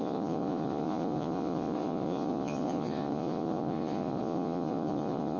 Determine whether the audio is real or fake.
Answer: fake